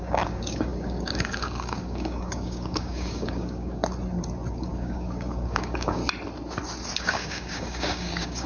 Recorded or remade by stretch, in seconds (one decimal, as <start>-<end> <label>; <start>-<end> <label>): 0.0-3.8 remade; 3.8-4.5 recorded; 4.5-6.0 remade; 6.0-7.0 recorded; 7.0-8.5 remade